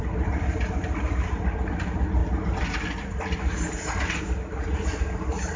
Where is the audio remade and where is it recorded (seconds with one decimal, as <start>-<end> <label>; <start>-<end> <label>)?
0.0-5.6 recorded